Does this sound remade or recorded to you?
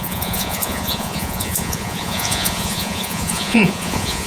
remade